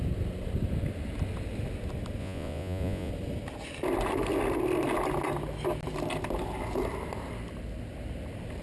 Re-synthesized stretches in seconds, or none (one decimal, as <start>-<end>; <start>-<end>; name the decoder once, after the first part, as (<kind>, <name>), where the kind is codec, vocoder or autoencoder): 2.2-3.1 (vocoder, Vocos)